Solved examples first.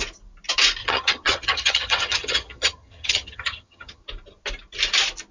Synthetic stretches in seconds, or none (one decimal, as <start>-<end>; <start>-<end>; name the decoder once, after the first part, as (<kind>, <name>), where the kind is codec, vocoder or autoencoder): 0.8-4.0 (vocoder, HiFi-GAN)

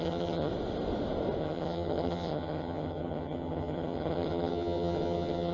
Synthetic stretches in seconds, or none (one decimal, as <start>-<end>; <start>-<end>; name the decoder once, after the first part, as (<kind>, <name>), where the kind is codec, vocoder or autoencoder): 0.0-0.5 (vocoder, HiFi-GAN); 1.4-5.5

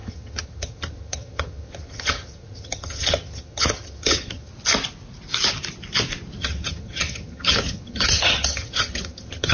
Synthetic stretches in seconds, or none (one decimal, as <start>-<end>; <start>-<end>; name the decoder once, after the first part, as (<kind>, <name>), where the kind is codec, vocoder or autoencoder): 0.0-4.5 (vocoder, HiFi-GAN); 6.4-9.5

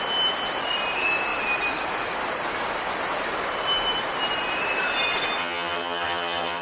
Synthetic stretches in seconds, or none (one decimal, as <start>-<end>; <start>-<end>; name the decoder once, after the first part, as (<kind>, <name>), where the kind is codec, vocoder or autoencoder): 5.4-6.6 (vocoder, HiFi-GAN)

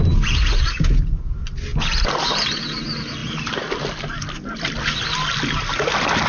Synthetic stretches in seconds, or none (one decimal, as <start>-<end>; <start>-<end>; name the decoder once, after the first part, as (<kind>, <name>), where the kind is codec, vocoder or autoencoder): none

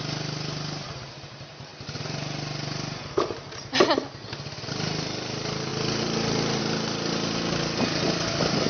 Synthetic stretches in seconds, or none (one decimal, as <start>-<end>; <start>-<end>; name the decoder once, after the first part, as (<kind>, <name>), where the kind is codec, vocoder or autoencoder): none

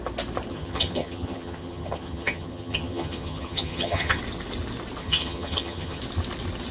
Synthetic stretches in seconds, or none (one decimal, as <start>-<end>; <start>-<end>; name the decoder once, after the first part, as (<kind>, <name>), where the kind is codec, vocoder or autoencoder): 0.5-4.2 (vocoder, HiFi-GAN); 5.0-6.0